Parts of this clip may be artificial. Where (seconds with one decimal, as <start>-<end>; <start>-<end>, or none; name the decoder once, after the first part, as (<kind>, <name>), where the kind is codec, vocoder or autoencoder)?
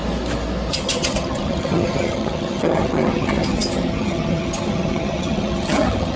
0.7-6.2 (vocoder, HiFi-GAN)